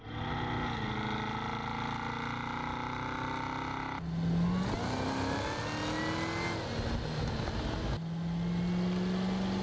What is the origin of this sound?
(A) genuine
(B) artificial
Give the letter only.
A